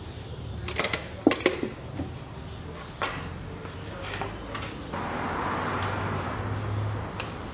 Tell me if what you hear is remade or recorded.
recorded